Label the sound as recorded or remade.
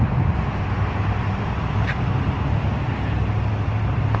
recorded